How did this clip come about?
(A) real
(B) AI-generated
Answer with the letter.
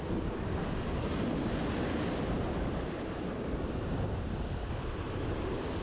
A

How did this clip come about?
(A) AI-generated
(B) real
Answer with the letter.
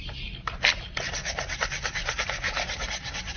B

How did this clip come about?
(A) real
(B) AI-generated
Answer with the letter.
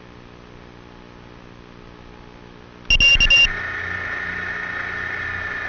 A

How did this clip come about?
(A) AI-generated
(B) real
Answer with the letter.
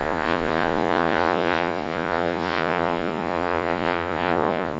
A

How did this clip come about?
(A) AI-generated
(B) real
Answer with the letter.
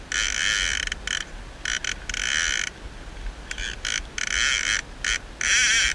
B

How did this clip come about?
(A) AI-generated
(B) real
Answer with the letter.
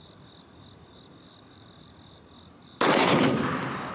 B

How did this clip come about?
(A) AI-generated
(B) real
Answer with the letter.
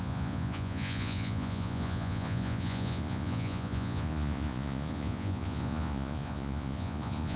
A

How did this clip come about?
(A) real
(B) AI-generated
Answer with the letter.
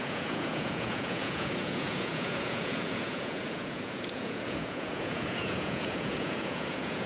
B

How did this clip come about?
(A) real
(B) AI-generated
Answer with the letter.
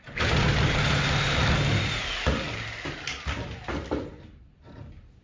A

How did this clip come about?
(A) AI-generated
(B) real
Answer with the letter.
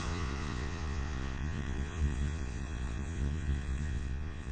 A